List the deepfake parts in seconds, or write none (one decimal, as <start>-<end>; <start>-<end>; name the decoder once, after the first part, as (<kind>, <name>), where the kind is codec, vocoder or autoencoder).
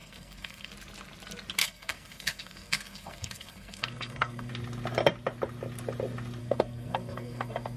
0.0-0.7 (codec, SNAC); 1.6-4.5; 6.4-7.8